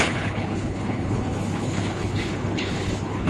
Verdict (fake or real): fake